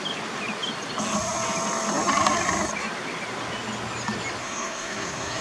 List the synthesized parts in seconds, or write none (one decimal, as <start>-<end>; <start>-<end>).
4.4-5.4